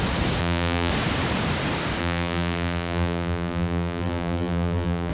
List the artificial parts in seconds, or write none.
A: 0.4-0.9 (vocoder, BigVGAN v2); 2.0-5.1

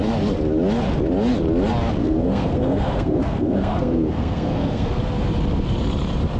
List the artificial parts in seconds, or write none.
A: 2.0-5.0 (codec, SNAC)

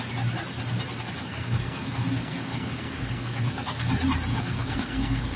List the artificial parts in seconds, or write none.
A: 1.2-3.9 (codec, SNAC); 4.3-5.4

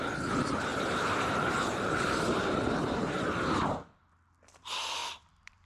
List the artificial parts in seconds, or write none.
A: 0.7-4.1 (vocoder, BigVGAN v2); 5.0-5.7

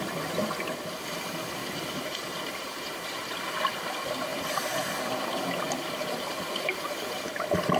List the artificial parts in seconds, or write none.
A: 1.6-3.4 (vocoder, BigVGAN v2)

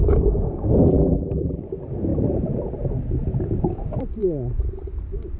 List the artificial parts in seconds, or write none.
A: 0.9-1.6 (vocoder, BigVGAN v2)

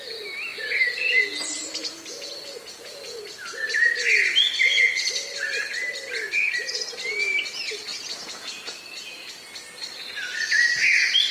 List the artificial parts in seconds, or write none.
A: 0.5-3.2 (vocoder, Vocos); 7.9-9.3